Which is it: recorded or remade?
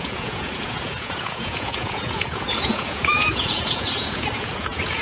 remade